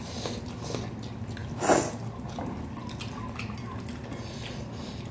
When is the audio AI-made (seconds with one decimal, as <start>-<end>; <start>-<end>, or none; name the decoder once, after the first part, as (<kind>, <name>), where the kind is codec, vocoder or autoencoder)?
none